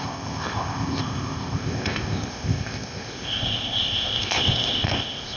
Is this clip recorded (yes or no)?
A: no